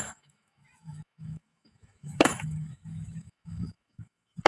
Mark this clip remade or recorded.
remade